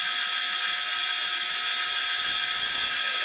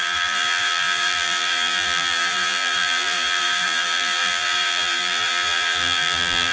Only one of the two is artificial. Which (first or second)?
second